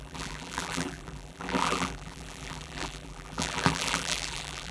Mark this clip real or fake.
fake